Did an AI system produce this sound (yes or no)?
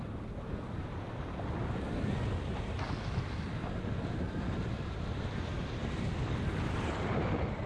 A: no